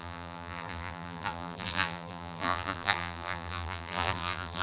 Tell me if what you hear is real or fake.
fake